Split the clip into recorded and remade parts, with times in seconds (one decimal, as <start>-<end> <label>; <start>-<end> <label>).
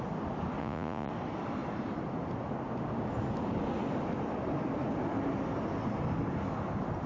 0.0-0.6 recorded; 0.6-1.1 remade; 1.1-7.1 recorded